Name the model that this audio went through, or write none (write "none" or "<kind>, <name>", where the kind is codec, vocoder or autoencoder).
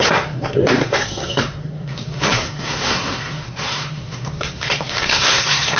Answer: codec, SNAC